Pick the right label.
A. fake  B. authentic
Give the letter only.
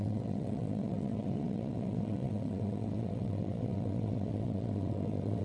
A